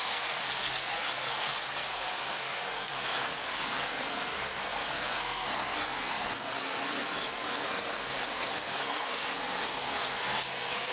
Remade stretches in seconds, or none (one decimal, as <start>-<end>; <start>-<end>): 0.0-10.9